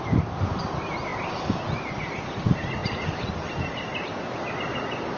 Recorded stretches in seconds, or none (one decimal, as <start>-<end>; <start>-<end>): 0.0-1.1; 1.8-4.1; 4.8-5.2